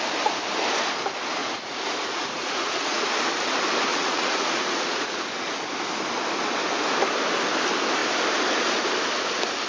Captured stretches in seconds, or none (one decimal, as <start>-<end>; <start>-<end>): 0.0-1.4; 3.0-3.9; 5.5-9.7